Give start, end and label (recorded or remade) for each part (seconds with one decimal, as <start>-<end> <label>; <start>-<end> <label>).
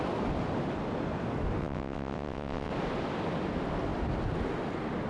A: 0.0-1.6 recorded; 1.6-2.7 remade; 2.7-5.1 recorded